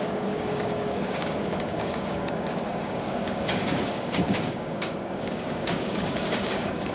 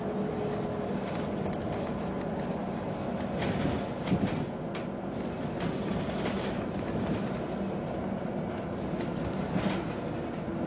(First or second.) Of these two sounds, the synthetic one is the first